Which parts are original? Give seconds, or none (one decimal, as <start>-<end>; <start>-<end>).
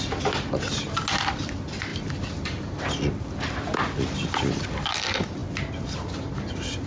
0.0-6.9